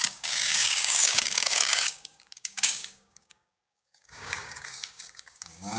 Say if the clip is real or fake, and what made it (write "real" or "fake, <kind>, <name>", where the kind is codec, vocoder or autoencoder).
fake, codec, DAC